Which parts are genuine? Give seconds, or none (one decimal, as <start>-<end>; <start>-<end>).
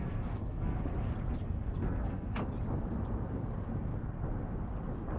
0.8-1.4; 2.3-5.2